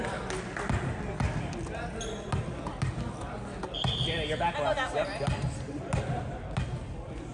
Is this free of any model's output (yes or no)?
yes